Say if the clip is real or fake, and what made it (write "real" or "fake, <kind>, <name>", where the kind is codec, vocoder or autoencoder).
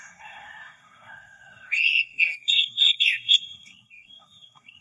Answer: fake, codec, SNAC